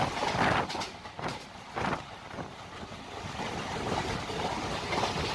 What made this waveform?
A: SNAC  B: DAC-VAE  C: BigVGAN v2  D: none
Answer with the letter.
D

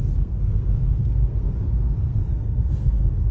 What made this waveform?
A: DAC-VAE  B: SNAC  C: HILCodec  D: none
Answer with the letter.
B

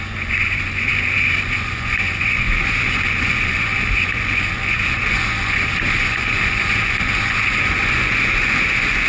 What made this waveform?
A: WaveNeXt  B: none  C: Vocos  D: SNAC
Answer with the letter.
C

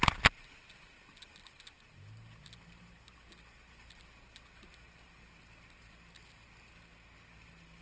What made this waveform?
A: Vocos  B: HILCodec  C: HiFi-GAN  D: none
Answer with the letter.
D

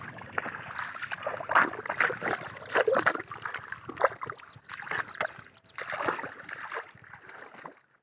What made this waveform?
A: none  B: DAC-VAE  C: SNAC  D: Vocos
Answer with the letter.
A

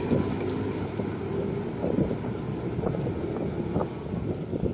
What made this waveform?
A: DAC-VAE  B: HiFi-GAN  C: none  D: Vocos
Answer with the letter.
C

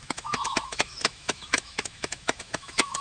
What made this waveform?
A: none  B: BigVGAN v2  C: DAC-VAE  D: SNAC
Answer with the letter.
C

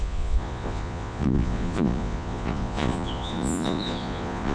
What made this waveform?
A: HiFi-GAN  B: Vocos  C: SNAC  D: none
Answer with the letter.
B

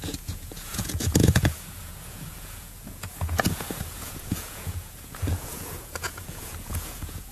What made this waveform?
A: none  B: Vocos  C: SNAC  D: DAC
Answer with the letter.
B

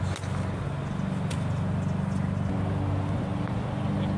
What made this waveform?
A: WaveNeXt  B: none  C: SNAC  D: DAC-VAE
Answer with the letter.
B